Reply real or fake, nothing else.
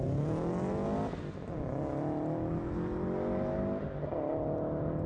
real